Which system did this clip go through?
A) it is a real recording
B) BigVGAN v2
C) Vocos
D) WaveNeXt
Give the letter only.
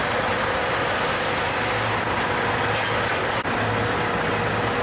A